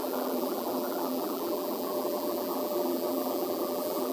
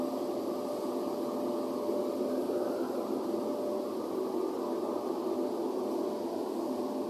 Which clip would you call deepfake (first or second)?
first